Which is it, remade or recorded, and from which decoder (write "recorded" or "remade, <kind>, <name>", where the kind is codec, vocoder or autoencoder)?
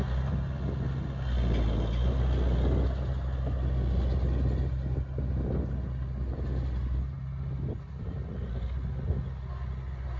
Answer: recorded